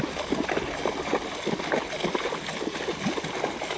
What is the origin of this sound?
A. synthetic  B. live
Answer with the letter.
B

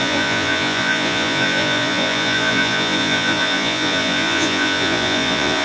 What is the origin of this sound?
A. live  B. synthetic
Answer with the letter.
B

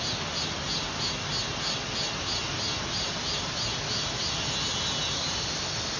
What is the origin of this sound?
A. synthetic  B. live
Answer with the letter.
B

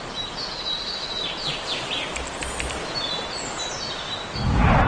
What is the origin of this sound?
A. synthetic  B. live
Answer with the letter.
B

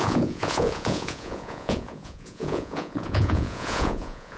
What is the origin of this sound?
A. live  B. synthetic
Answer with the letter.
B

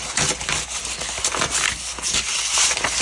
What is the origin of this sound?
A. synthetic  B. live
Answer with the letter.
B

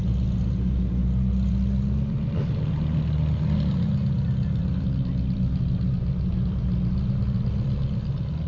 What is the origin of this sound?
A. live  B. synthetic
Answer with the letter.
A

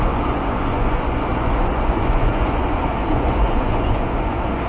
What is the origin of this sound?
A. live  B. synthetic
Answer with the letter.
B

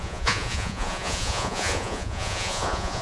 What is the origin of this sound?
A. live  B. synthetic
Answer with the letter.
B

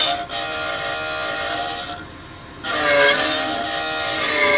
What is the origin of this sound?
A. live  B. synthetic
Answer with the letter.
A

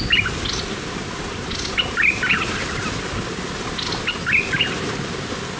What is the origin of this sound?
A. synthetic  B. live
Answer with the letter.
B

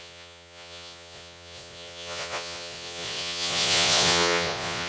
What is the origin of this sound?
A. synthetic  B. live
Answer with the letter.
A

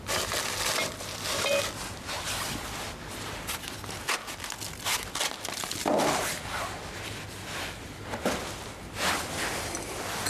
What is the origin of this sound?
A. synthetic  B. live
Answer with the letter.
B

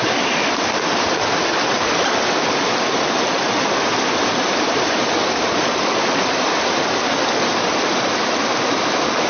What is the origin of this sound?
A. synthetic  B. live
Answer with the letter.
B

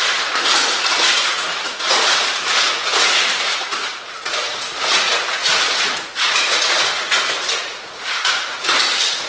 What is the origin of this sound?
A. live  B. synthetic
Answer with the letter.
B